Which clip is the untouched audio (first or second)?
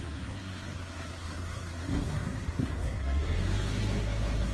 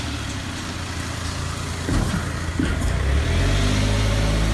second